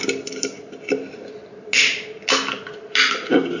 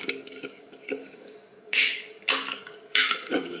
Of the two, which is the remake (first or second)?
second